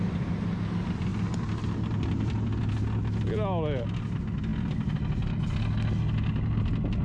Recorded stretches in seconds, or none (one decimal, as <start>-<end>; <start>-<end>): 0.0-7.0